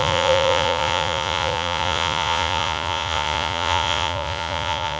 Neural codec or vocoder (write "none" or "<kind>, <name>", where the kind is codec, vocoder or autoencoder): vocoder, Vocos